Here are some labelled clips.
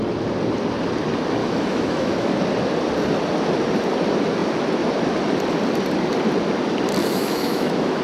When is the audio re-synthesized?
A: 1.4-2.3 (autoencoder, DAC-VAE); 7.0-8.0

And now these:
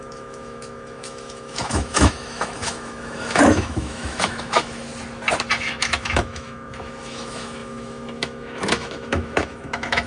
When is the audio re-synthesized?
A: 0.0-4.9 (autoencoder, DAC-VAE); 5.6-10.1